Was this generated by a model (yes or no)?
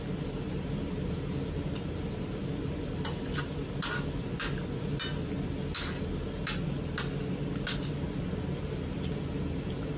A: no